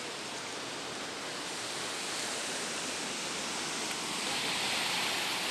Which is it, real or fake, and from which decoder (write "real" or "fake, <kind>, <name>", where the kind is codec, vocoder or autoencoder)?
real